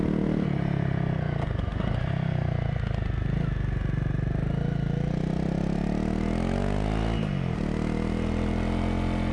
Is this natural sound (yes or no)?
yes